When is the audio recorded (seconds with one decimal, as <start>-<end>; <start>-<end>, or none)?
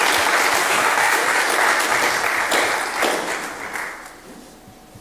0.0-0.6; 1.4-5.0